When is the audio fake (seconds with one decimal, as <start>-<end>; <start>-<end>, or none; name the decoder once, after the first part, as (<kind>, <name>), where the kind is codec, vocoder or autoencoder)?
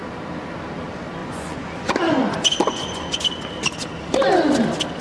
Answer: 1.2-3.5 (vocoder, Vocos)